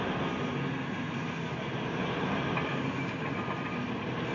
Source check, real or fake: real